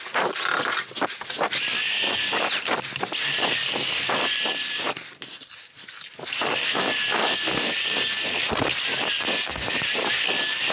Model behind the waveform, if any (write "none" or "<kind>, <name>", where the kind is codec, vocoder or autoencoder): none